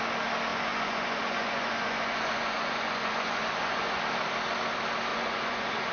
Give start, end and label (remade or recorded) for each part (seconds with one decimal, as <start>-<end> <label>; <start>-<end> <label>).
0.0-0.5 recorded; 0.5-4.0 remade; 4.0-5.1 recorded; 5.1-5.9 remade